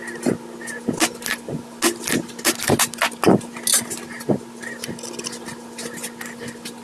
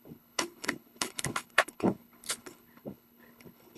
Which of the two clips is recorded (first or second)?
first